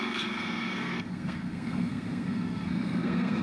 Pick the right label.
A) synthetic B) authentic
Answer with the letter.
A